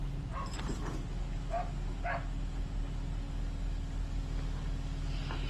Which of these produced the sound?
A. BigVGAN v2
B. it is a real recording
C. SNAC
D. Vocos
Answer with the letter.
B